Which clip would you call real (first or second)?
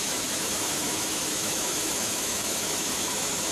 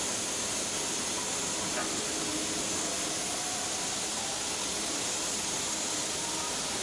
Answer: second